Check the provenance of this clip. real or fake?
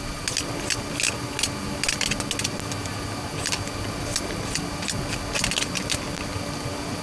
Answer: real